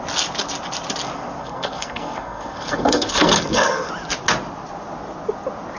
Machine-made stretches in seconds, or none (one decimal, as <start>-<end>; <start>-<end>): 1.4-3.9